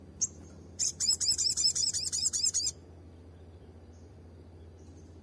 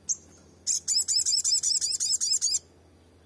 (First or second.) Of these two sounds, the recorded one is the second